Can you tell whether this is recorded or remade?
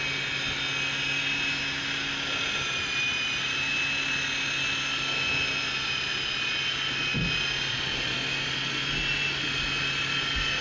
recorded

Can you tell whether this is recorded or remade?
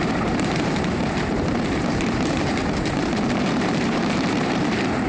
remade